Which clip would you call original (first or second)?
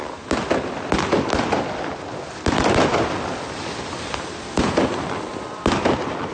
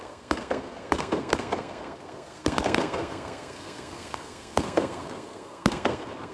first